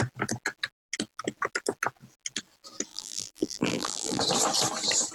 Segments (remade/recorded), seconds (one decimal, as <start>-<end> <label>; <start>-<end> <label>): 0.0-2.9 recorded; 2.9-4.2 remade; 4.2-5.1 recorded

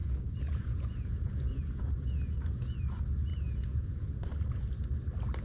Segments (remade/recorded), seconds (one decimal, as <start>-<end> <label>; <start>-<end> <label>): 0.0-2.8 remade; 2.8-3.3 recorded; 3.3-4.1 remade; 4.1-5.4 recorded

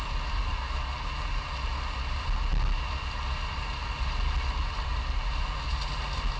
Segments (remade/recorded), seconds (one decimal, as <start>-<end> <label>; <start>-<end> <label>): 0.0-6.4 recorded

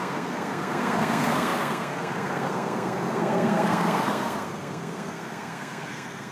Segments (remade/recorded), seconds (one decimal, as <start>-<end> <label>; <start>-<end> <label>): 0.0-6.3 remade

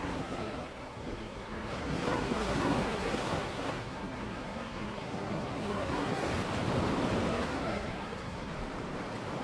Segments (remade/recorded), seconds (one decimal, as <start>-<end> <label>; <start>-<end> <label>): 0.0-6.3 remade; 6.3-7.3 recorded; 7.3-8.5 remade; 8.5-9.4 recorded

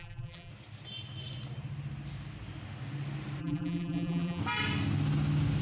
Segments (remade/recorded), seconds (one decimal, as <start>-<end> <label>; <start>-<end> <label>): 0.0-0.5 remade; 0.5-3.4 recorded; 3.4-4.4 remade; 4.4-5.6 recorded

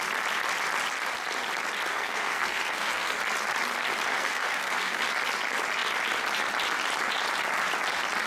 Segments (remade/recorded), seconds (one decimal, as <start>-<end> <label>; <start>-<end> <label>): 0.0-1.9 recorded; 1.9-3.2 remade; 3.2-4.1 recorded; 4.1-5.0 remade; 5.0-8.3 recorded

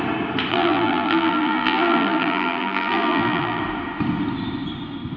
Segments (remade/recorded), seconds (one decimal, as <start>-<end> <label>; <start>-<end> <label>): 0.0-0.5 recorded; 0.5-3.6 remade; 3.6-5.2 recorded